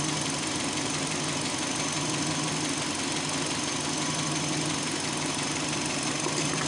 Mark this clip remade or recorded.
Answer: recorded